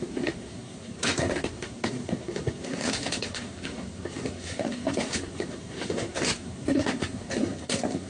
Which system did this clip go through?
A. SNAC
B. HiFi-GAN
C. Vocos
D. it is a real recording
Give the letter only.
A